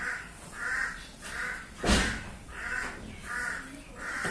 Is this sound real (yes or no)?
yes